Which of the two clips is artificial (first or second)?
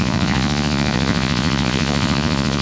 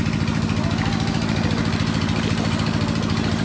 first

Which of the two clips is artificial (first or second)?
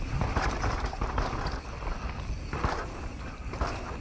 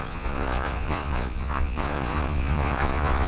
second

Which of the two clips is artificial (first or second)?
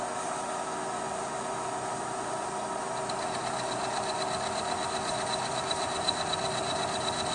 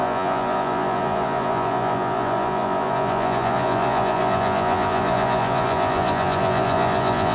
second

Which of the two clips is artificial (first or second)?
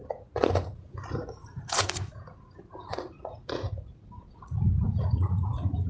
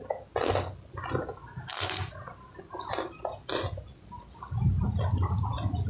first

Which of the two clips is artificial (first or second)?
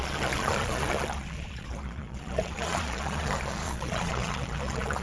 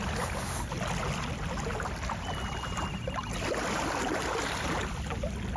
first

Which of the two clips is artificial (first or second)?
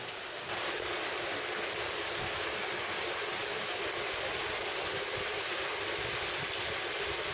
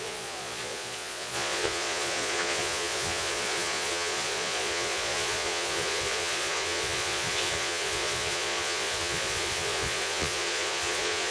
second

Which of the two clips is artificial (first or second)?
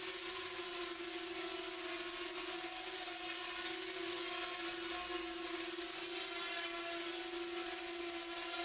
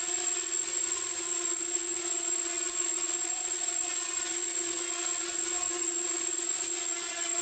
second